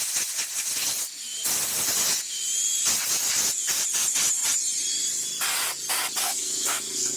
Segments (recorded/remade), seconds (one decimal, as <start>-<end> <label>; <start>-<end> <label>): 0.0-6.2 recorded; 6.2-7.2 remade

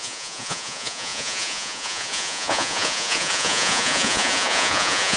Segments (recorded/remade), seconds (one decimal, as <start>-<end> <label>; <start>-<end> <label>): 0.0-5.2 remade

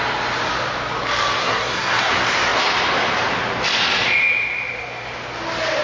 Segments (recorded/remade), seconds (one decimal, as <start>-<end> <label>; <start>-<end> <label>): 0.0-1.4 recorded; 1.4-2.1 remade; 2.1-5.8 recorded